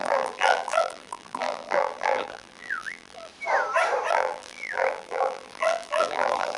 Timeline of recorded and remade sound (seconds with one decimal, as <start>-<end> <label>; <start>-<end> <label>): 0.0-3.3 remade; 3.3-4.1 recorded; 4.1-6.6 remade